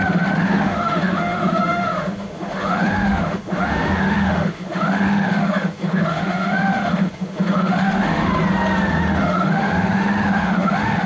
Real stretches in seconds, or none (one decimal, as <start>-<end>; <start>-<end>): 8.3-9.0